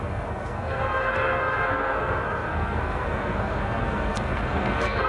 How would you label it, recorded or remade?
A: remade